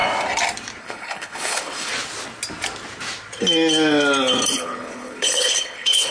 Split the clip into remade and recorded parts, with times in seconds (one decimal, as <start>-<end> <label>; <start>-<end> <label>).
0.0-0.8 recorded; 0.8-1.9 remade; 1.9-4.5 recorded; 4.5-6.1 remade